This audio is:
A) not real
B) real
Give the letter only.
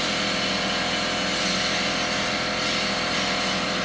B